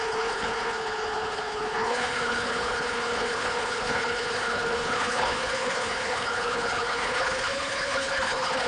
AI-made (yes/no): yes